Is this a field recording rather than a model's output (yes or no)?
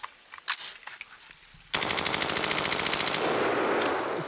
yes